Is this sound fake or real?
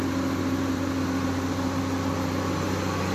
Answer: real